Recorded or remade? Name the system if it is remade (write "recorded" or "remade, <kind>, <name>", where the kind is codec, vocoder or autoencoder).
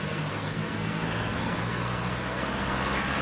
remade, codec, SNAC